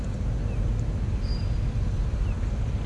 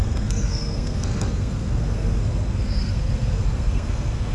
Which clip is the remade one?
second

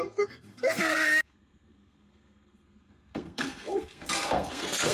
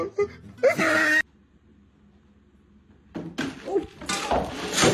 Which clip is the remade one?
first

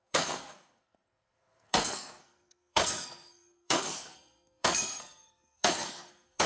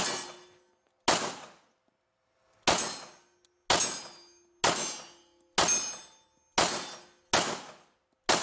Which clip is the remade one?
first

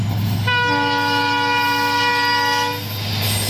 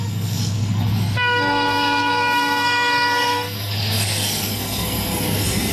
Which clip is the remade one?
second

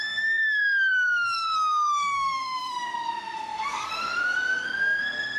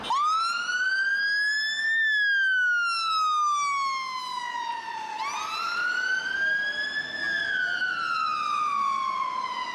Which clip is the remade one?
first